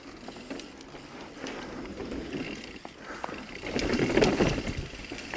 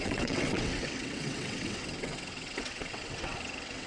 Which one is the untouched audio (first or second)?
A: first